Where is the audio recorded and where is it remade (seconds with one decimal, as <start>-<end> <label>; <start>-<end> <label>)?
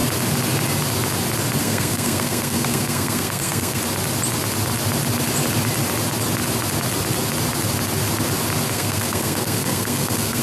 0.0-1.6 recorded; 1.6-3.8 remade; 3.8-8.7 recorded; 8.7-10.4 remade